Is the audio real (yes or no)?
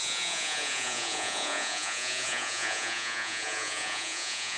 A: no